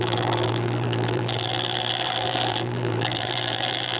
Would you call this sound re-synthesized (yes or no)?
yes